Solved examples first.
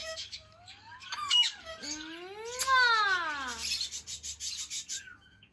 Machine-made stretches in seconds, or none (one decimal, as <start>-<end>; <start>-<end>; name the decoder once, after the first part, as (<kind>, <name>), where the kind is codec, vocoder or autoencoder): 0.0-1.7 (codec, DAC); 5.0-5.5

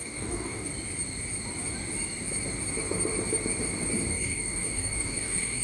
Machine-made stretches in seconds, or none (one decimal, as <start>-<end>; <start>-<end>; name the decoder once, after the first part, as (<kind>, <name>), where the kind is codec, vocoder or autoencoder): 0.0-0.7 (codec, DAC); 4.1-5.6

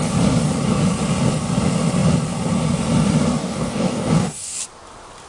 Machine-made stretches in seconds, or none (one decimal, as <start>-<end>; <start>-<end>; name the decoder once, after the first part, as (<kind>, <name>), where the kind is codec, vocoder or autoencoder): 3.4-4.6 (codec, DAC)

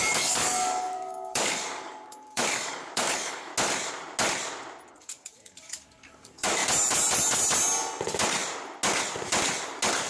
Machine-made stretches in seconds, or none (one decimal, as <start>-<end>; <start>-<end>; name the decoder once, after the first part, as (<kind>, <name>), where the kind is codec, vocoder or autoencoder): 0.0-3.5 (codec, DAC); 4.9-6.6

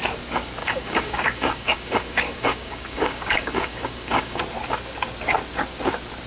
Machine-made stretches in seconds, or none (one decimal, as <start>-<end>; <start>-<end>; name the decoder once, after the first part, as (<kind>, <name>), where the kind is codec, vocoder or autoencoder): 0.6-4.4 (codec, DAC)

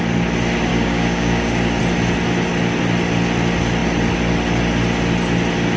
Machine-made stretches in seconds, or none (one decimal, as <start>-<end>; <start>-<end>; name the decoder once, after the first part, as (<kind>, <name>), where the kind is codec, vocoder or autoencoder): 0.7-1.8 (codec, DAC)